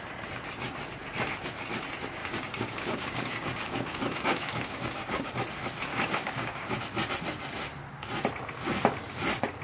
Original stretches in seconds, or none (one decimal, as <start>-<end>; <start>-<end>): 0.0-2.2; 5.3-5.9; 6.8-9.6